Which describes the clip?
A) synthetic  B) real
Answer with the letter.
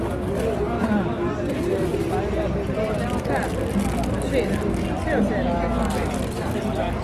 B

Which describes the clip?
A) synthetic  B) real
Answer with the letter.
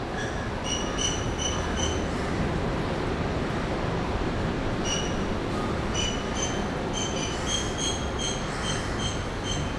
B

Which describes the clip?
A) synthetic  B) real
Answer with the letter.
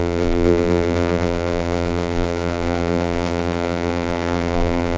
A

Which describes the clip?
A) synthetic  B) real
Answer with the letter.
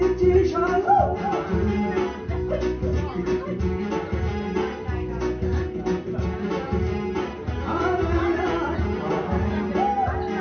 B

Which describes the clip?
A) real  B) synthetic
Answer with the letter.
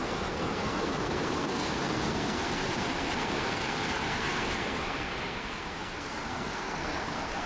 B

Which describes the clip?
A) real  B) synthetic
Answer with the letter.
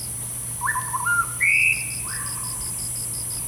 A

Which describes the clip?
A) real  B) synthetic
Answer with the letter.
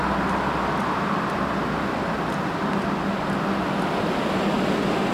A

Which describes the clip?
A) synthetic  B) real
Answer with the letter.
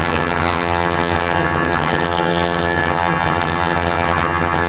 A